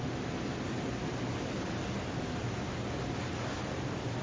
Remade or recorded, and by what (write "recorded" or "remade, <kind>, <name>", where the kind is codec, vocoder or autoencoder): recorded